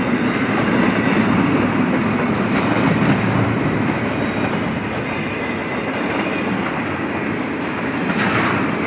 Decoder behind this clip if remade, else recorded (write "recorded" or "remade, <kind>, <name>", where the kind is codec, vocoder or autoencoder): recorded